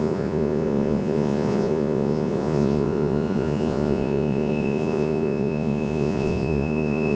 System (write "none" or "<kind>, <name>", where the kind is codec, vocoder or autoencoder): vocoder, Vocos